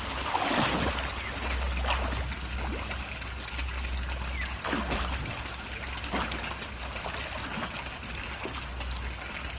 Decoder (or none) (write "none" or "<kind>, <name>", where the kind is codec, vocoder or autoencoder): none